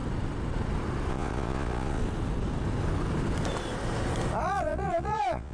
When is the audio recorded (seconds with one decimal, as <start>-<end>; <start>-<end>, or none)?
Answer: 0.0-1.1; 2.0-4.4